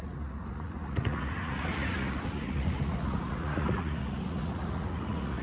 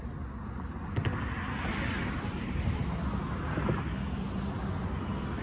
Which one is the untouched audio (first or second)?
second